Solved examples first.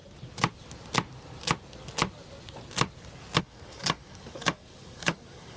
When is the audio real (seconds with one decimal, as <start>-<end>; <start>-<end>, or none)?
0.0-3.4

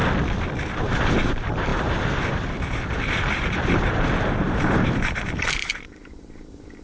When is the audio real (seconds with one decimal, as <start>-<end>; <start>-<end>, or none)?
0.0-0.7

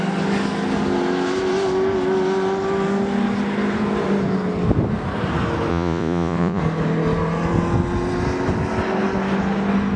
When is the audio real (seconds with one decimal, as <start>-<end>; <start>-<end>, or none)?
0.0-5.7; 6.6-10.0